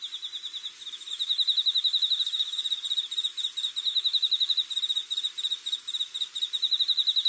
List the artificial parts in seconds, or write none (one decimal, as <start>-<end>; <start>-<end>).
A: 0.8-2.6; 3.9-4.5